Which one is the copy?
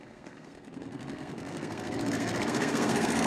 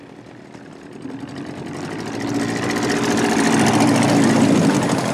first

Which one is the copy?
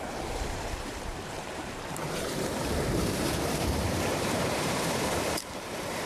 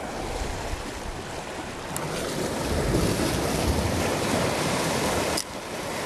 first